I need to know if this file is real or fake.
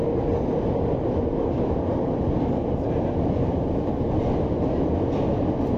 real